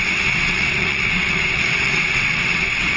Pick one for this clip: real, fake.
fake